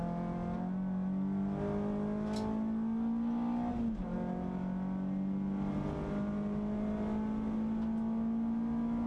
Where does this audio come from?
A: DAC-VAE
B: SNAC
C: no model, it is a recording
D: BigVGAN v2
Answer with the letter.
C